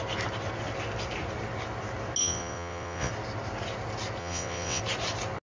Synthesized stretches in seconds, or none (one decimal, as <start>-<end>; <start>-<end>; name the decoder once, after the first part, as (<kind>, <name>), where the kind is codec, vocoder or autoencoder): 2.2-3.1 (vocoder, WaveNeXt); 4.2-4.8